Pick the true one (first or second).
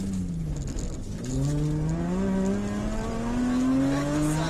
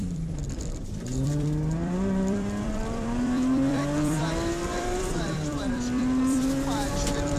first